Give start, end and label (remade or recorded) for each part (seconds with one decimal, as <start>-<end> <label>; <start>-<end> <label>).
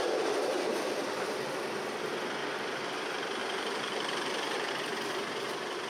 0.0-0.7 remade; 0.7-2.4 recorded; 2.4-2.9 remade; 2.9-3.4 recorded; 3.4-4.7 remade; 4.7-5.9 recorded